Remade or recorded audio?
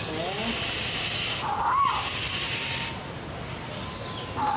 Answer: recorded